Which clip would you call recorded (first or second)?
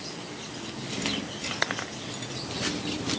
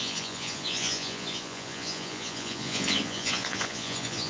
first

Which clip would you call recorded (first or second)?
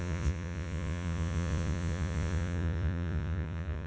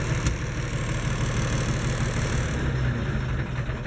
second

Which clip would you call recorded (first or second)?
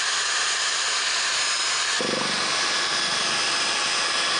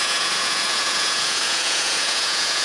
first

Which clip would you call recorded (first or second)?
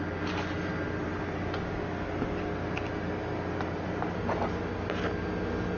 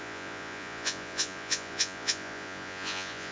first